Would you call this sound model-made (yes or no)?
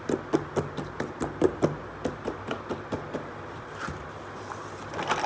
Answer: no